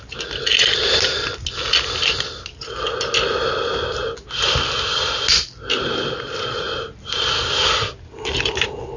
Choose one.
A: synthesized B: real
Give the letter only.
B